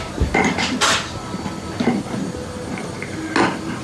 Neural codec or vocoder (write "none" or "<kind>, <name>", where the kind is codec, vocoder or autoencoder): none